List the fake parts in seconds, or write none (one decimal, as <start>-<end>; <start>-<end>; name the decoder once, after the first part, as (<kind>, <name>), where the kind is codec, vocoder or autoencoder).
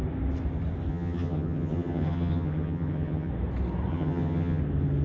0.9-3.3 (vocoder, HiFi-GAN); 3.9-4.6